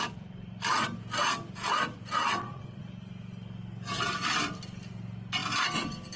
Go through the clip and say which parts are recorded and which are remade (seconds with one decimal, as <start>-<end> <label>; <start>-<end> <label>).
0.0-2.2 recorded; 2.2-2.8 remade; 2.8-6.2 recorded